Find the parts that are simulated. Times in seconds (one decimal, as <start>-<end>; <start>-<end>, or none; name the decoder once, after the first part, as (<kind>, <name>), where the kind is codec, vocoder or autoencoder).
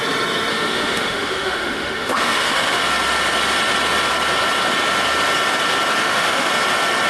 0.5-2.8 (autoencoder, DAC-VAE); 6.0-6.5